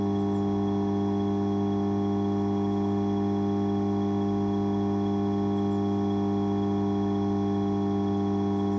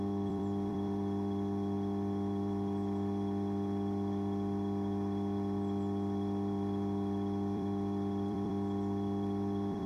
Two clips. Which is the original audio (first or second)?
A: first